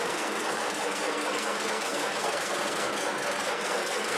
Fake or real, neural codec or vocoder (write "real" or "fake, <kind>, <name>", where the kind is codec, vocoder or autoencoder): fake, codec, SNAC